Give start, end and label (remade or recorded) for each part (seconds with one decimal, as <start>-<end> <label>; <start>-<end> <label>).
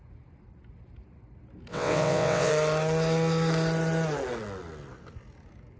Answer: 0.0-1.7 recorded; 1.7-2.5 remade; 2.5-5.8 recorded